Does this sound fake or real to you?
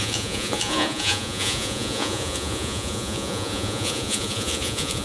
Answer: fake